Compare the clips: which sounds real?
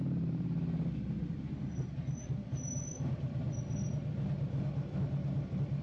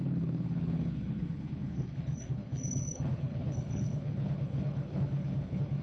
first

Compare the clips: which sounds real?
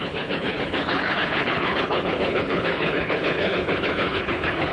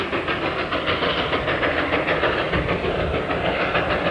second